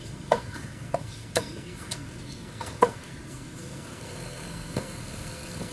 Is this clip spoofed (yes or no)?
yes